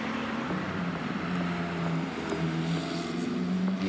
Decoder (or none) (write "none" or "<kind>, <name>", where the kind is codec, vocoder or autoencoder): none